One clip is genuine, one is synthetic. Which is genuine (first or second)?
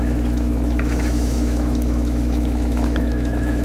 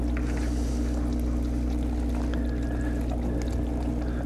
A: second